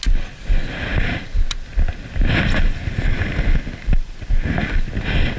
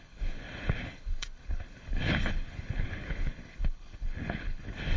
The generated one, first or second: second